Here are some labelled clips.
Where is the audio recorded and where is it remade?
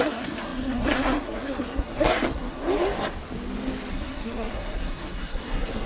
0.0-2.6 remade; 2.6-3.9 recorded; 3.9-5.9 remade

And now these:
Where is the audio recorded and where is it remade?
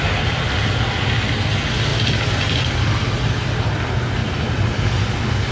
0.0-5.5 recorded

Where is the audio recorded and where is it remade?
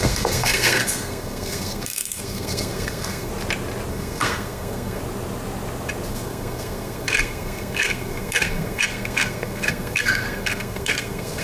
0.0-3.3 remade; 3.3-3.9 recorded; 3.9-5.0 remade; 5.0-6.1 recorded; 6.1-11.4 remade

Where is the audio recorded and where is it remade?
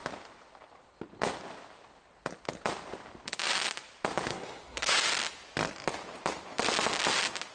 0.0-4.3 recorded; 4.3-5.0 remade; 5.0-7.5 recorded